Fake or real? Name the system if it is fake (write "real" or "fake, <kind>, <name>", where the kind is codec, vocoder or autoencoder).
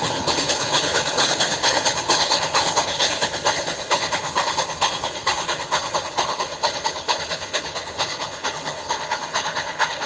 fake, codec, HILCodec